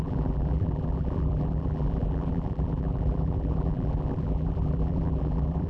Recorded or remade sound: remade